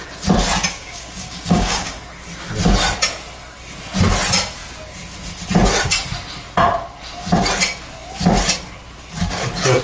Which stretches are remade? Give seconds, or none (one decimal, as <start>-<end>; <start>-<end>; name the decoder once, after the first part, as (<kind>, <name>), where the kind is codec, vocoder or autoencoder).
0.7-2.0 (codec, DAC)